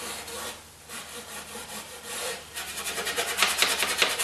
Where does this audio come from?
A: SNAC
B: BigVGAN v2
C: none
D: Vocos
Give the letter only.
C